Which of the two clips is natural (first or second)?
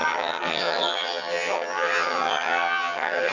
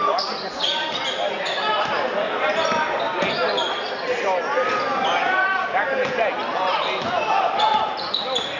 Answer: second